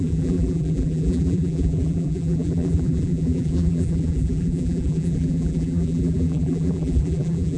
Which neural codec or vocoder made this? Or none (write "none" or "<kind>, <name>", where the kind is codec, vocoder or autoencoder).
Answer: vocoder, BigVGAN v2